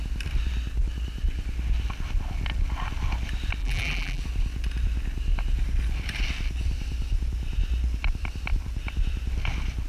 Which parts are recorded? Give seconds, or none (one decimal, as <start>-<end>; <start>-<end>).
0.0-3.6; 4.2-9.9